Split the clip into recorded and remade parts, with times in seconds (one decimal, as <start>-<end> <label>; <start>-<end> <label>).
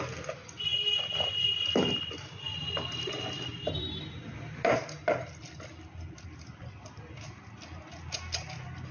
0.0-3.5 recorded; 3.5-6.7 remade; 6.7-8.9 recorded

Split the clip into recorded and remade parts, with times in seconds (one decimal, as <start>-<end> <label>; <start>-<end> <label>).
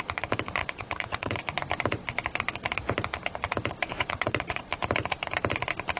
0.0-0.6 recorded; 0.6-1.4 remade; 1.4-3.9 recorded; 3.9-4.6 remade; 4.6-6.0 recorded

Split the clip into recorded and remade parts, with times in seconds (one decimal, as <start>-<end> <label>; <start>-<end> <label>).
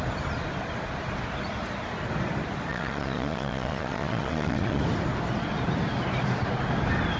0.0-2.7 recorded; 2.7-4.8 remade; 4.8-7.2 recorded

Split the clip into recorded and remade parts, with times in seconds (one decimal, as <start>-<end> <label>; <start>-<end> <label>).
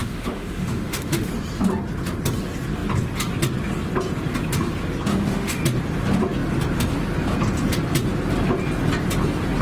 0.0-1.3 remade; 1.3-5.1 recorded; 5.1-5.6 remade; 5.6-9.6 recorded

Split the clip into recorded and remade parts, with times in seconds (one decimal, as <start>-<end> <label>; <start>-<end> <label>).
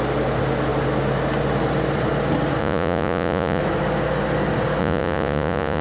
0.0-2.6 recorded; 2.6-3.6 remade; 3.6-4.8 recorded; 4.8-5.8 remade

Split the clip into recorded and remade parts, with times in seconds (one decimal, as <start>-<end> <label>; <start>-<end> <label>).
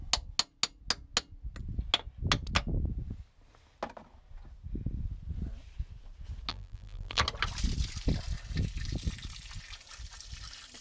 0.0-6.5 recorded; 6.5-7.2 remade; 7.2-10.8 recorded